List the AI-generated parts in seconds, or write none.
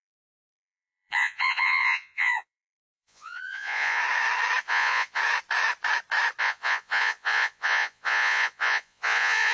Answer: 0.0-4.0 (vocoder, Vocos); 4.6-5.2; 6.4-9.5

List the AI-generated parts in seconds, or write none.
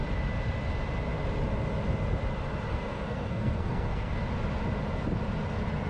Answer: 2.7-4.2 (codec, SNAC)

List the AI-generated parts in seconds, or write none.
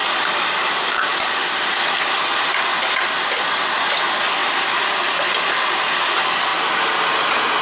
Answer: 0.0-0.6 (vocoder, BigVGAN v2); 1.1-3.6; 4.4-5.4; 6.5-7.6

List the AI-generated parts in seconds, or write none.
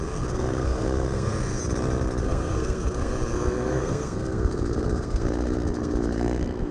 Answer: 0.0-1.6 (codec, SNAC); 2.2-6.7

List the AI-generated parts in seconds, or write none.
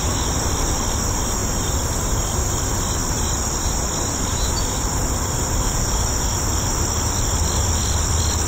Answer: 3.0-6.8 (vocoder, BigVGAN v2)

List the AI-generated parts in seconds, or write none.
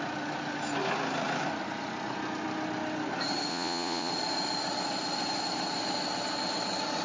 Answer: 3.5-4.1 (vocoder, Vocos)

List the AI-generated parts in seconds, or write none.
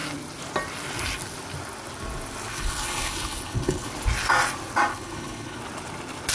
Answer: 2.5-3.9 (codec, HILCodec); 4.9-5.6